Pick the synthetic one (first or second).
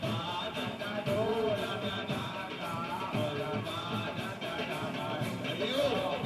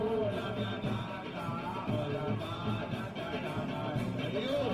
first